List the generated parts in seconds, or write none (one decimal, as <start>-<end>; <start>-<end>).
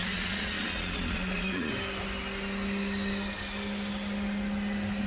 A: 0.0-1.7